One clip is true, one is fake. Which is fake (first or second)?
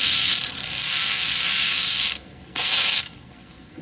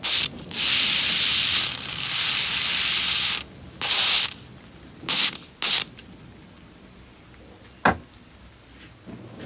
first